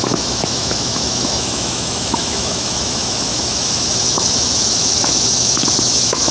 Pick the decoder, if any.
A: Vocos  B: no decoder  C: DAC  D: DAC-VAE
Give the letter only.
D